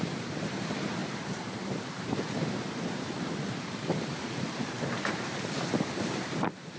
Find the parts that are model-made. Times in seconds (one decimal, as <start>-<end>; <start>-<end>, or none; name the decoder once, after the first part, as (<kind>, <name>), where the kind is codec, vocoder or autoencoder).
0.0-6.8 (vocoder, BigVGAN v2)

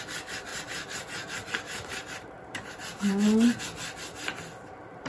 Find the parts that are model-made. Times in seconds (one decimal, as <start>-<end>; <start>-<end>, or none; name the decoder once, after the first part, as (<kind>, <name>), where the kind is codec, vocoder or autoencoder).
0.5-3.6 (vocoder, BigVGAN v2)

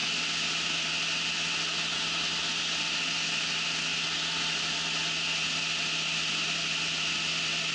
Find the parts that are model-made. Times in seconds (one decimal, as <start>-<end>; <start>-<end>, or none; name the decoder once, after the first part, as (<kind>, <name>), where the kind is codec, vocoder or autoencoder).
none

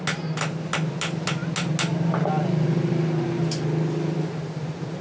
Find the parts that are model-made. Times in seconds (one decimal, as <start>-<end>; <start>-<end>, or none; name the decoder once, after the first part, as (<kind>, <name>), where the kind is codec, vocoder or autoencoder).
none

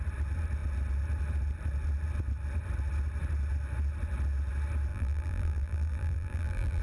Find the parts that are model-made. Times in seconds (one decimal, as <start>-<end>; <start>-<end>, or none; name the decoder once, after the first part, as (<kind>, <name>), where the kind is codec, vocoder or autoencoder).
4.9-6.8 (vocoder, BigVGAN v2)

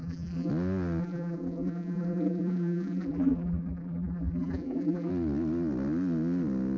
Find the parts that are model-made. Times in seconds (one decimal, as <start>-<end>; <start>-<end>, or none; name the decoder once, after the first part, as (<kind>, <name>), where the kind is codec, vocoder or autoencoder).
0.0-0.5 (vocoder, BigVGAN v2); 1.0-5.1

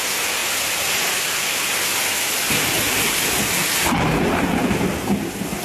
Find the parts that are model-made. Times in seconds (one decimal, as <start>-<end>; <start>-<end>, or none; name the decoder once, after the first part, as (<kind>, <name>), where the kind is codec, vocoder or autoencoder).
0.4-3.4 (vocoder, BigVGAN v2); 4.6-5.6

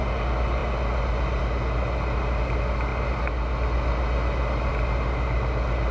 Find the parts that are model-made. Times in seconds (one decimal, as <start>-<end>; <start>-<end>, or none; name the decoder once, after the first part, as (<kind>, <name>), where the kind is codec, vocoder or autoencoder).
none